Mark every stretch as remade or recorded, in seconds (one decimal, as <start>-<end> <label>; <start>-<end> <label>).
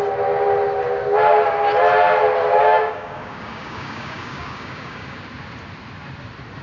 0.0-2.6 recorded; 2.6-5.2 remade; 5.2-6.6 recorded